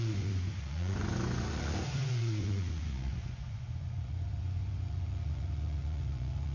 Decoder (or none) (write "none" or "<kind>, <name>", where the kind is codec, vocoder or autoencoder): vocoder, Vocos